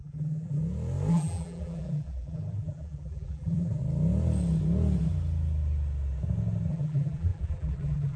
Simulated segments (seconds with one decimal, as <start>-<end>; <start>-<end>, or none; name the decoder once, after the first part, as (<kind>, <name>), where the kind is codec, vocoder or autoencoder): 0.0-0.6 (vocoder, BigVGAN v2); 1.1-3.8; 6.7-8.2